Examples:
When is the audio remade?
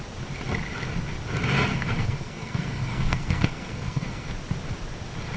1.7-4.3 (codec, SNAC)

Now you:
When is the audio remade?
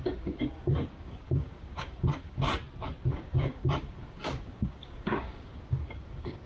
0.0-2.5 (codec, DAC); 3.1-6.5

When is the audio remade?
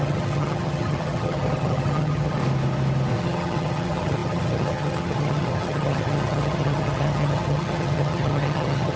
0.0-2.4 (vocoder, HiFi-GAN); 3.2-9.0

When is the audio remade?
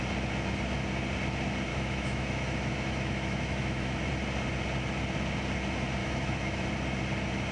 1.7-4.1 (autoencoder, DAC-VAE); 6.0-6.7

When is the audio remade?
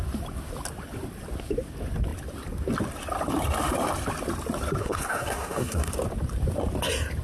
4.8-5.9 (codec, SNAC)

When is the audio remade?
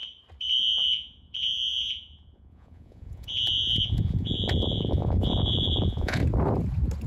0.6-6.2 (vocoder, Vocos)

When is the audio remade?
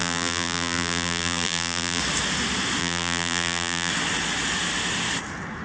0.0-2.0 (vocoder, BigVGAN v2); 2.8-3.9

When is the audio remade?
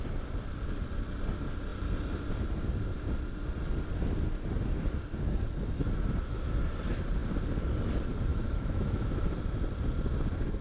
8.3-9.3 (autoencoder, DAC-VAE)